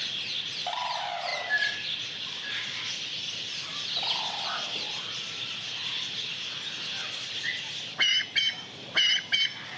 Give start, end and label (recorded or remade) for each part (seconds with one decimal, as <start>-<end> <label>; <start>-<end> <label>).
0.0-9.8 recorded